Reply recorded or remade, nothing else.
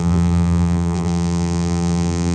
remade